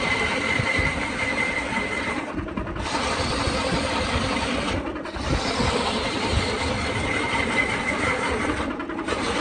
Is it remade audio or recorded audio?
remade